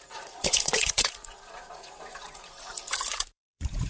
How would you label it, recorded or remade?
remade